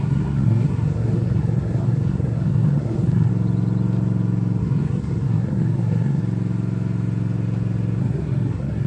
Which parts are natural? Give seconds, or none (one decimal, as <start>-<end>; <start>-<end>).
3.3-4.6; 6.2-8.0